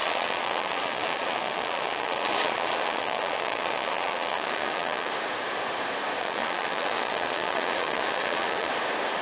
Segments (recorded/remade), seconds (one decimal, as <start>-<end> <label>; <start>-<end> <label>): 0.0-5.1 remade; 5.1-6.2 recorded; 6.2-8.7 remade; 8.7-9.2 recorded